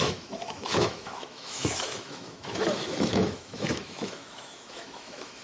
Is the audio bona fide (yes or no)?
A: no